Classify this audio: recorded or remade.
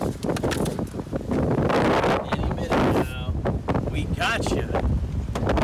recorded